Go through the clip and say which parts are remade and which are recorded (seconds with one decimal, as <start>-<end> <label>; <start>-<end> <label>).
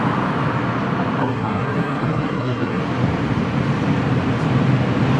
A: 0.0-1.2 recorded; 1.2-2.8 remade; 2.8-5.2 recorded